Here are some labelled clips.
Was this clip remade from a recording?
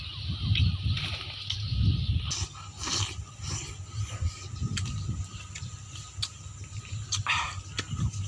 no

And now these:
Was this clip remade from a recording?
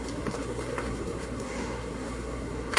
yes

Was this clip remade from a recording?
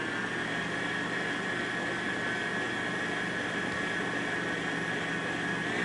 no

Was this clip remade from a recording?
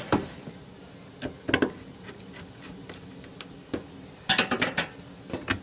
no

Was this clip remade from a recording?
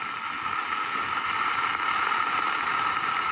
no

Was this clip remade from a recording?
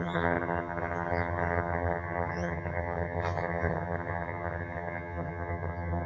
yes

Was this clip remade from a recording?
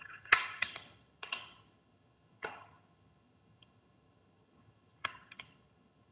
yes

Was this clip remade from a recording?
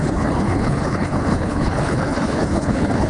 yes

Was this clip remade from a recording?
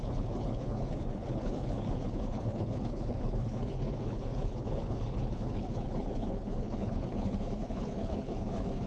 yes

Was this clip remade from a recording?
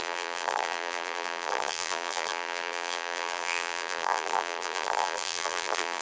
yes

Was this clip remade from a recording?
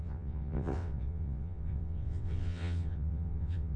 yes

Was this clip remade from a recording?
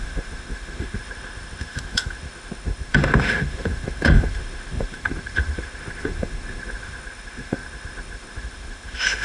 yes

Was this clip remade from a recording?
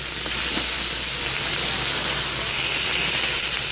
no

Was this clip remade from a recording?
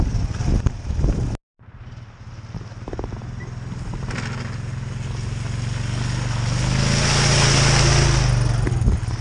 no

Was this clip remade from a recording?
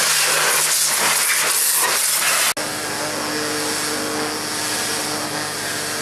no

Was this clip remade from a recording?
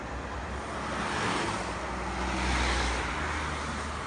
no